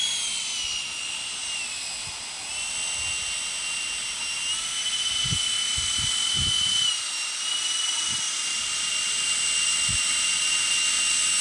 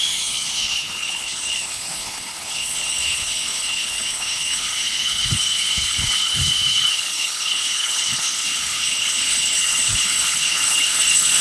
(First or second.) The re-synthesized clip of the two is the second